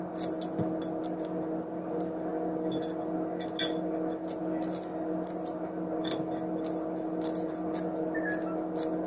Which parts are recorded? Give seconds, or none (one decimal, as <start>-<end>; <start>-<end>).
0.0-9.1